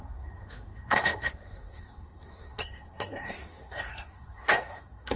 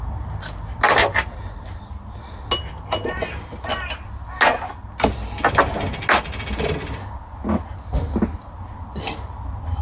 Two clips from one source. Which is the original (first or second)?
second